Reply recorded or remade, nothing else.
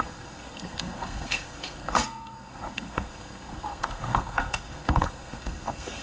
remade